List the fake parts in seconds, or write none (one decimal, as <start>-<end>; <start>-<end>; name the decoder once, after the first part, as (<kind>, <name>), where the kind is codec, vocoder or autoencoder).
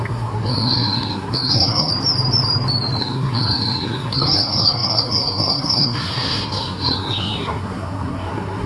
0.0-1.9 (codec, SNAC); 3.0-8.7